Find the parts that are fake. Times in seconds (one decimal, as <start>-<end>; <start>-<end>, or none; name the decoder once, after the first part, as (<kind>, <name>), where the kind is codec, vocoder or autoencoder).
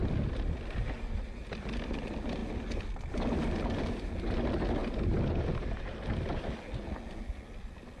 none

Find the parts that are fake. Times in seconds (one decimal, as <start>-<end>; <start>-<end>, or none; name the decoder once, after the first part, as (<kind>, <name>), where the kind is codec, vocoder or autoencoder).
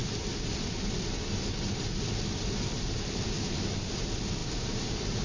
0.0-3.1 (vocoder, BigVGAN v2); 4.4-5.2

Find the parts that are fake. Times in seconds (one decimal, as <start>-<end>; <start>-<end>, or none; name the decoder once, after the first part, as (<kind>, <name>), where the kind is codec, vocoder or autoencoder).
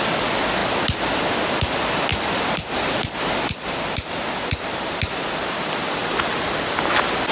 0.6-1.2 (vocoder, BigVGAN v2); 2.1-5.0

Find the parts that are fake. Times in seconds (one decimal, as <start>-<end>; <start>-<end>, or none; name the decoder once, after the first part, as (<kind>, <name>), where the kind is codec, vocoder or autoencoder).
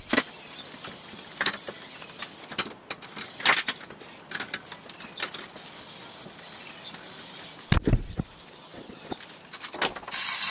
none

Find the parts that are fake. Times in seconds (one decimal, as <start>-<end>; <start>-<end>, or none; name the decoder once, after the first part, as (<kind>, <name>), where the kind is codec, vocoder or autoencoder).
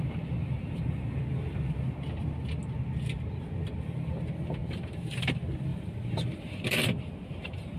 0.4-1.2 (vocoder, BigVGAN v2); 4.6-5.3; 5.7-7.8